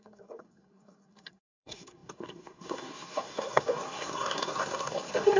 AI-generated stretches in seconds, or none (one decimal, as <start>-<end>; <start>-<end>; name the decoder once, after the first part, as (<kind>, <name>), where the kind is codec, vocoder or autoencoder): 0.0-5.4 (codec, SNAC)